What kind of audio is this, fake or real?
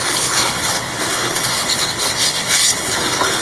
fake